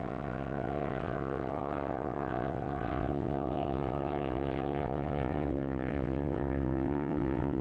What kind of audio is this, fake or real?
fake